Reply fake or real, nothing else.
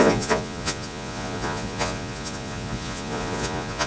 fake